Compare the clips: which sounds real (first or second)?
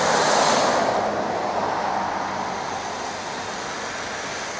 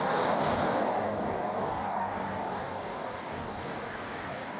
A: first